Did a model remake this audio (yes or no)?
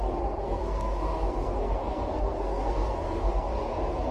yes